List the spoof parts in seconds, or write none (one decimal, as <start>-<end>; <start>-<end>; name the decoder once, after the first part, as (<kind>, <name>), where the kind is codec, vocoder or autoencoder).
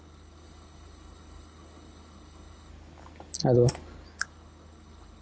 0.0-2.7 (codec, HILCodec); 4.2-5.2